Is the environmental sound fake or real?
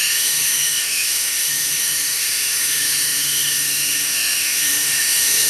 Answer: fake